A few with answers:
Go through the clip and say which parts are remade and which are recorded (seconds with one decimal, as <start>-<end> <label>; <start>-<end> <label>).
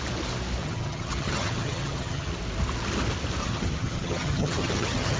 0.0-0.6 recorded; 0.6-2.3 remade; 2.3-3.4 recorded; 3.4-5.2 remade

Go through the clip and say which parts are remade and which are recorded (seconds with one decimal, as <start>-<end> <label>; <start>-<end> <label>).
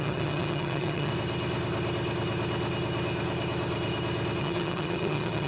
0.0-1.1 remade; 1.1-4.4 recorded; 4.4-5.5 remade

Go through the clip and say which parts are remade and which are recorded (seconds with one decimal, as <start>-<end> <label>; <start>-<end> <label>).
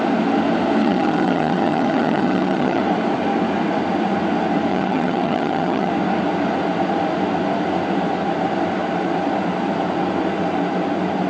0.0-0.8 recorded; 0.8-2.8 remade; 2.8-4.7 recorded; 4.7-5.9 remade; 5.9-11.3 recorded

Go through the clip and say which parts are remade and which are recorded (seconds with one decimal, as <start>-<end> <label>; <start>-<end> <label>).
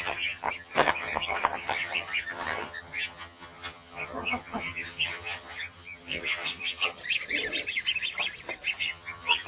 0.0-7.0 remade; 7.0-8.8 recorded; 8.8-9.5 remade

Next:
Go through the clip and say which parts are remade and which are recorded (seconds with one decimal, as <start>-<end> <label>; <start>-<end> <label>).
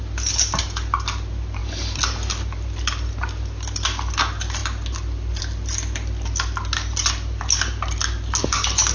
0.0-8.9 recorded